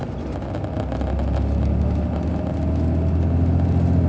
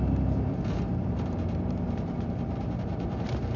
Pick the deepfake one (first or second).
second